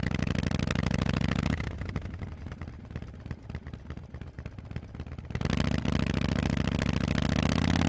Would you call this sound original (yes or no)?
yes